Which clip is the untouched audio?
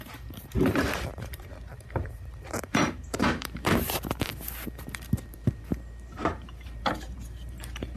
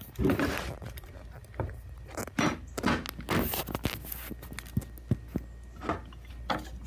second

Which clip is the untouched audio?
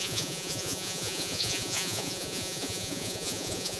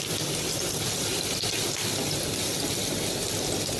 second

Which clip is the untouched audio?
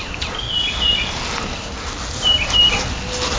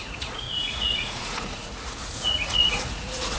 first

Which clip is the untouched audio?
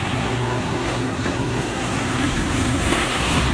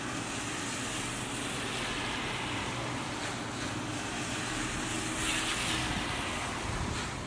second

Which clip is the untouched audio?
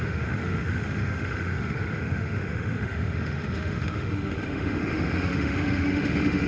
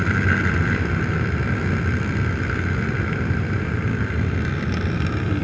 second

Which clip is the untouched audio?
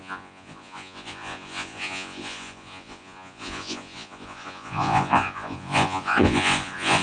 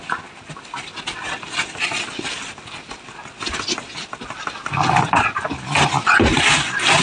second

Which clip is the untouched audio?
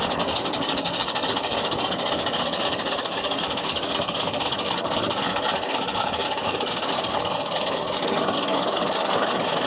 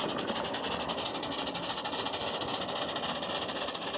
second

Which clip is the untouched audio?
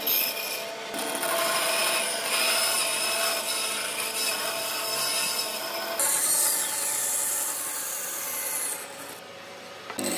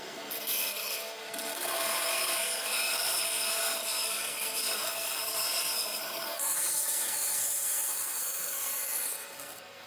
first